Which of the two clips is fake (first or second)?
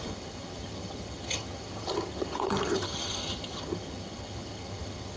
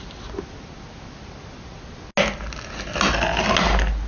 first